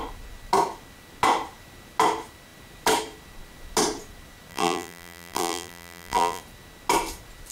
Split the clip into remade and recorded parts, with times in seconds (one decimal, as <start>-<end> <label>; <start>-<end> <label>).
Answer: 0.0-4.5 recorded; 4.5-6.4 remade; 6.4-7.5 recorded